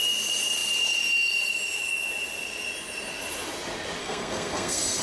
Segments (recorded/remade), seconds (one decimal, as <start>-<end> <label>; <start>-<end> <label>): 0.0-4.0 recorded; 4.0-5.0 remade